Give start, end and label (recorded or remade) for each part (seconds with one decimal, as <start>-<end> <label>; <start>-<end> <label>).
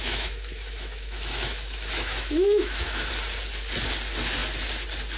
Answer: 0.0-3.1 remade; 3.1-5.2 recorded